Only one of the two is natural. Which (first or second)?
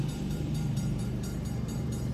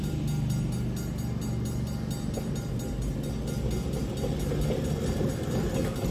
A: second